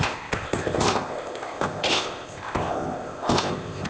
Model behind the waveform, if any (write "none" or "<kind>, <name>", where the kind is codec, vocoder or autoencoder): codec, ZipCodec